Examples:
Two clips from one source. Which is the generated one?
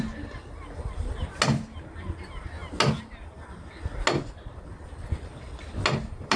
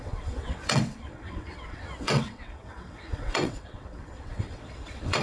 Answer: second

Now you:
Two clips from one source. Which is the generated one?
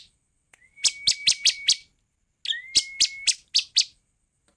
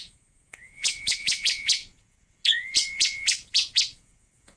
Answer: second